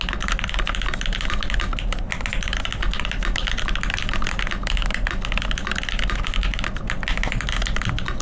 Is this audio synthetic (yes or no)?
no